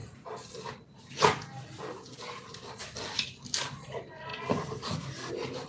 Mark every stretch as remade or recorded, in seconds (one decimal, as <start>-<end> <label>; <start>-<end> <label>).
0.0-5.7 recorded